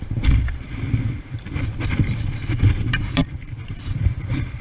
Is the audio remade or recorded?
remade